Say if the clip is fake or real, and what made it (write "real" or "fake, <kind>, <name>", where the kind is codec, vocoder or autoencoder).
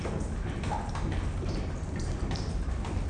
real